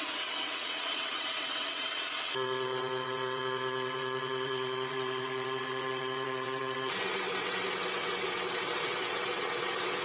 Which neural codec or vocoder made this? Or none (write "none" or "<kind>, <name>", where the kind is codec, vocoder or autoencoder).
vocoder, WaveNeXt